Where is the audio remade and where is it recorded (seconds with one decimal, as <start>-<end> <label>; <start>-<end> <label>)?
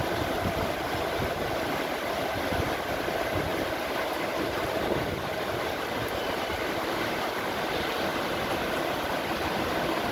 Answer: 0.0-10.1 recorded